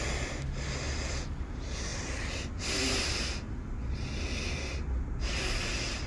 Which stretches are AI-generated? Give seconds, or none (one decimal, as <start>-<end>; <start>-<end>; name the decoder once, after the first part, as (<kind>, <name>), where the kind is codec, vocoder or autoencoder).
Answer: none